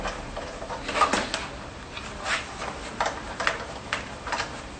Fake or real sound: real